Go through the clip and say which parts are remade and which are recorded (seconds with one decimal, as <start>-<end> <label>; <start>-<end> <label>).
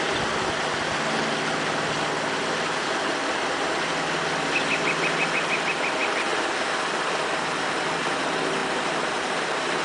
0.0-6.3 recorded; 6.3-8.1 remade; 8.1-8.6 recorded; 8.6-9.8 remade